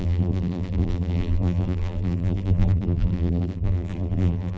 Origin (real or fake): fake